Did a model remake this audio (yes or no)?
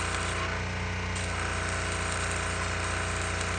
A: no